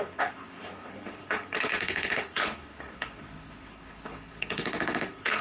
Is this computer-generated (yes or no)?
yes